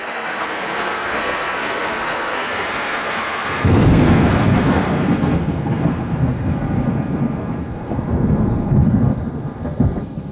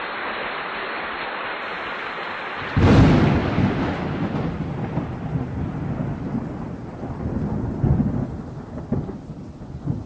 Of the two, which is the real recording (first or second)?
second